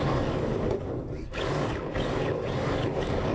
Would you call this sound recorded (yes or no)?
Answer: no